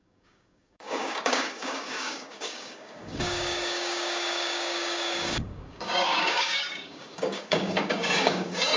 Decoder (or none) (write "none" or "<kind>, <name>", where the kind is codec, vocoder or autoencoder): codec, DAC